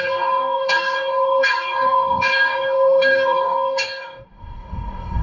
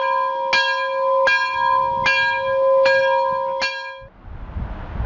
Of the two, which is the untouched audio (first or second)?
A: second